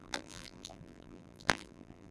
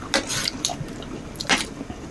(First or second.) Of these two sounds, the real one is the second